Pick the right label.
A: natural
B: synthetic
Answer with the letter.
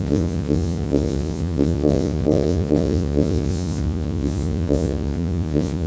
B